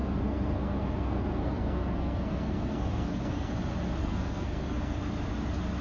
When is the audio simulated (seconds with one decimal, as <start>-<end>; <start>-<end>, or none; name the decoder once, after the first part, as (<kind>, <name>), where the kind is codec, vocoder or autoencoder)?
0.0-3.5 (codec, SNAC); 4.0-5.0